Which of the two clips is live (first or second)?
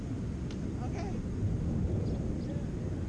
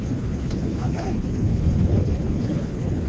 first